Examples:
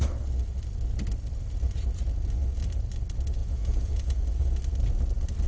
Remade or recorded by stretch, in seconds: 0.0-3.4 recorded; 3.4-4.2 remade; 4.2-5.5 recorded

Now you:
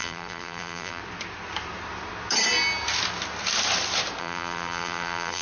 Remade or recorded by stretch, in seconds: 0.0-1.0 remade; 1.0-4.2 recorded; 4.2-5.4 remade

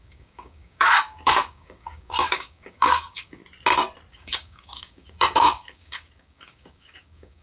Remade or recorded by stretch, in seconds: 0.0-3.4 remade; 3.4-4.1 recorded; 4.1-7.4 remade